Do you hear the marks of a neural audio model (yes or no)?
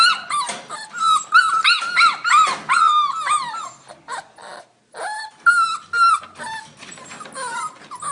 no